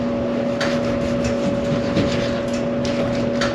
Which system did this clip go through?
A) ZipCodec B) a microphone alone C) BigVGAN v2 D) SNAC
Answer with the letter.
B